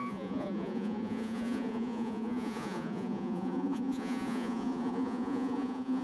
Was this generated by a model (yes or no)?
yes